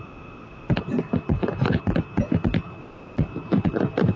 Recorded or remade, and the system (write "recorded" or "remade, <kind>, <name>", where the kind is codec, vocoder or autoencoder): recorded